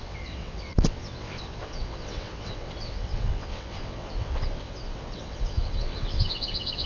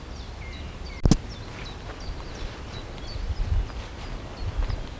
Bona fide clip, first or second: second